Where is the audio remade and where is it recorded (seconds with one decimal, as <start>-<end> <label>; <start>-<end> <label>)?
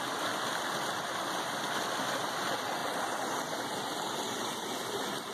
0.0-5.3 recorded